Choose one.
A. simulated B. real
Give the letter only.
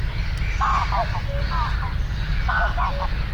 B